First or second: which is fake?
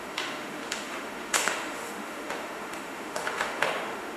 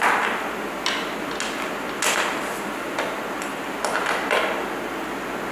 first